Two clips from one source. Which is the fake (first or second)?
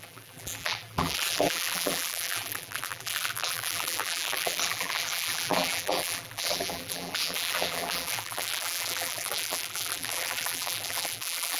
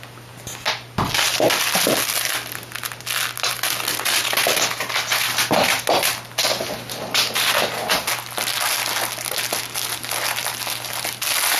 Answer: first